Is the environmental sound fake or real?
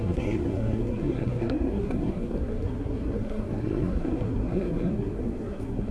fake